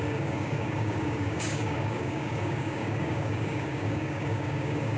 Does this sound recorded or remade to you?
remade